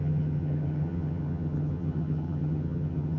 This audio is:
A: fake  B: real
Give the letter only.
A